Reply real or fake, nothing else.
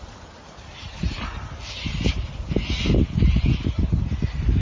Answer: real